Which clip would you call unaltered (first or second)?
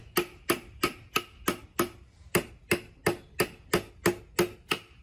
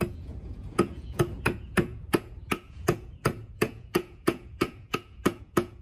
first